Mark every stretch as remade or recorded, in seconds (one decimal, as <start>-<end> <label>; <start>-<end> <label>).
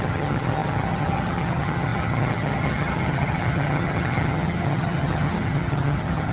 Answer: 0.0-6.3 remade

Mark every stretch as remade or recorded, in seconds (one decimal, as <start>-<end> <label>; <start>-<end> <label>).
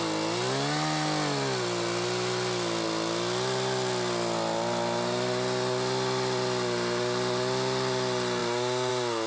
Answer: 0.0-9.3 recorded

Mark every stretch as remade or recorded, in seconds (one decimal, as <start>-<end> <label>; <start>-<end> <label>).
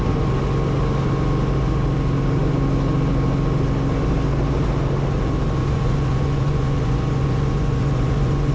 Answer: 0.0-5.6 recorded; 5.6-8.5 remade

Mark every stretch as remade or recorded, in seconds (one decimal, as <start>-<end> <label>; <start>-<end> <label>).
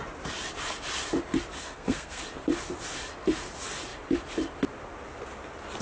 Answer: 0.0-1.6 recorded; 1.6-2.2 remade; 2.2-5.8 recorded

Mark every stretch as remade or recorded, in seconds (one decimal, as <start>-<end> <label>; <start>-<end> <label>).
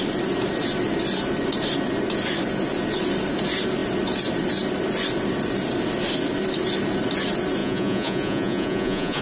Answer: 0.0-7.6 recorded; 7.6-9.2 remade